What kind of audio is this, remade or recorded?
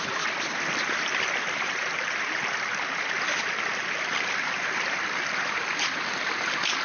recorded